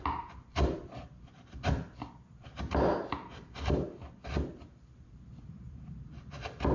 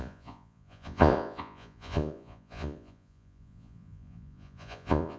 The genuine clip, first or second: first